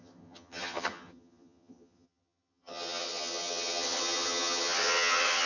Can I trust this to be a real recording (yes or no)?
no